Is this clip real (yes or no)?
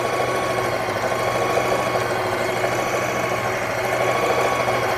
yes